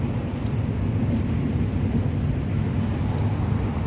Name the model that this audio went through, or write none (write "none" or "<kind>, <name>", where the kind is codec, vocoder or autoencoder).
none